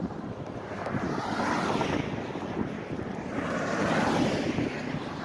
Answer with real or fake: real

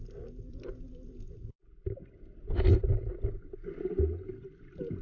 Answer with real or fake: real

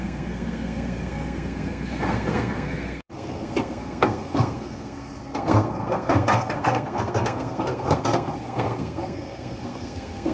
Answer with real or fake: fake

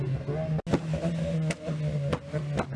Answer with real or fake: real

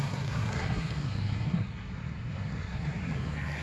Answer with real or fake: fake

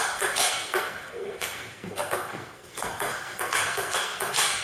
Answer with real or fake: fake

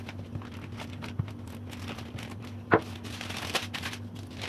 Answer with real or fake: real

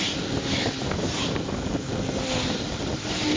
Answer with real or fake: real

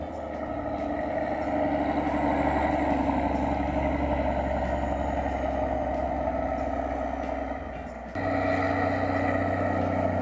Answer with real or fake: real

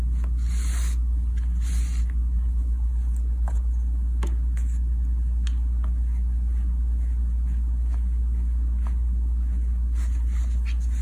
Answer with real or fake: real